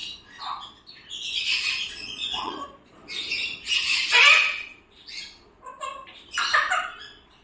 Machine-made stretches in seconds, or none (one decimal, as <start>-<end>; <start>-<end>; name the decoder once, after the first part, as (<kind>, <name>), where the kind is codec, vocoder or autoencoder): 1.7-3.0 (vocoder, Vocos); 7.0-7.4